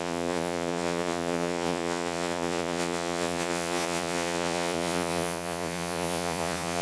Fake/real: fake